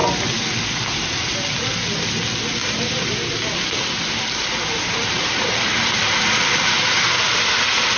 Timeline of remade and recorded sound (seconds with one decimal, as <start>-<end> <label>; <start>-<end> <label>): 0.0-2.6 recorded; 2.6-7.4 remade; 7.4-8.0 recorded